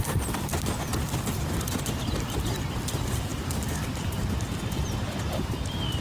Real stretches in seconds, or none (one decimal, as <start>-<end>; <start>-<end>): 0.0-6.0